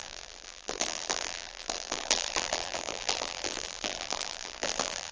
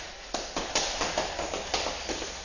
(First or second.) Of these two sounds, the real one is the second